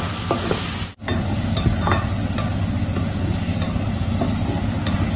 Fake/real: real